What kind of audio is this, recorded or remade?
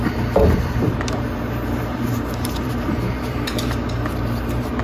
remade